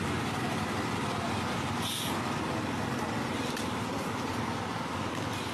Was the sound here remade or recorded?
recorded